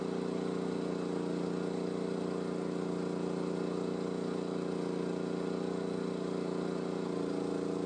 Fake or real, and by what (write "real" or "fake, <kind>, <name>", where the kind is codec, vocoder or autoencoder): real